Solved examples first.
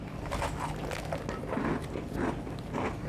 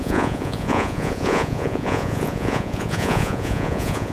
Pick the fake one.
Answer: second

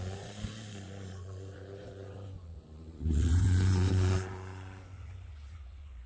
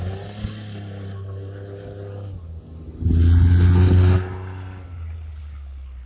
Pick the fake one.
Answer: first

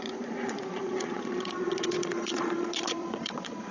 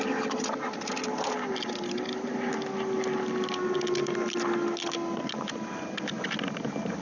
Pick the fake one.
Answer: first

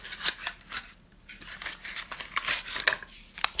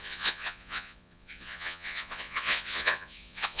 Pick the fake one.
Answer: second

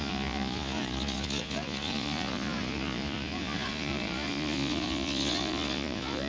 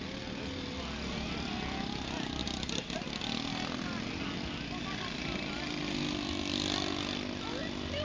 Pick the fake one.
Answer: first